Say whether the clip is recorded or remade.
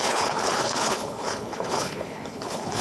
remade